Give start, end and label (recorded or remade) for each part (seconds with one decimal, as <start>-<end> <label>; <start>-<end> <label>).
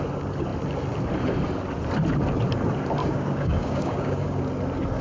0.0-3.0 recorded; 3.0-4.4 remade; 4.4-5.0 recorded